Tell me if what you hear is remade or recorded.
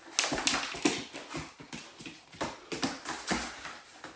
recorded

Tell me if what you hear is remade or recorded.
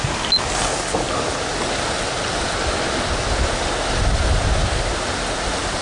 recorded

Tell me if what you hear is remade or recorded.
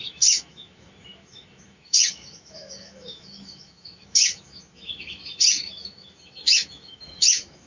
remade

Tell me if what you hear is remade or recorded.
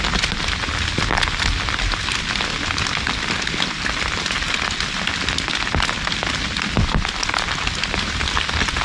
recorded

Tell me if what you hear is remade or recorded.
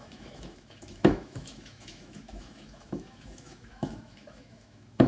remade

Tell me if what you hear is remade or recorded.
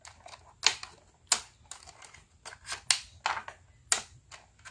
recorded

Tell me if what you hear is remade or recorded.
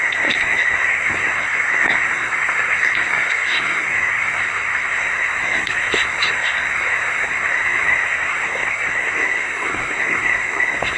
remade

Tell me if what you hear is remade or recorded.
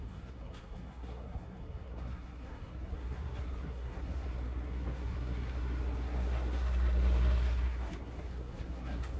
remade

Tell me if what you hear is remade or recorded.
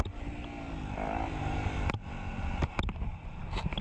recorded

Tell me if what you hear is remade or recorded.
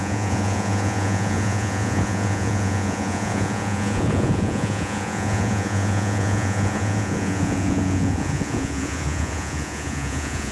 remade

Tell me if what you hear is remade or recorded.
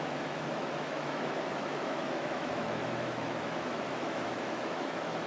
remade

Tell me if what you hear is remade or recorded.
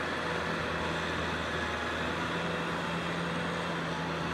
recorded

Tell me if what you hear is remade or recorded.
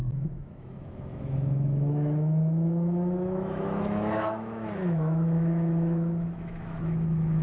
remade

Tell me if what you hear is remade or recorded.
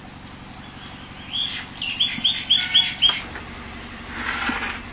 recorded